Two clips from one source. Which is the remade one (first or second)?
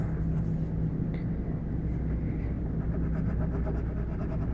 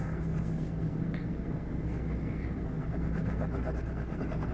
second